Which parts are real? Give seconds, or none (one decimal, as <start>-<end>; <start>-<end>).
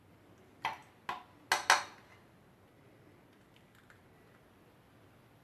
0.0-5.4